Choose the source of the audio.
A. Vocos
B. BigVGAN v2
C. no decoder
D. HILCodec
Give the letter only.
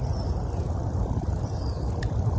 C